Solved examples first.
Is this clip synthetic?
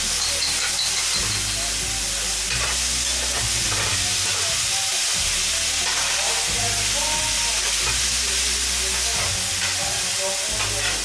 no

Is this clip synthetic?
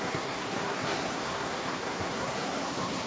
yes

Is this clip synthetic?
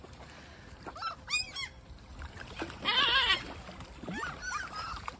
no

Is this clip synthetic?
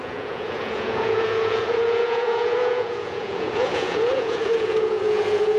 yes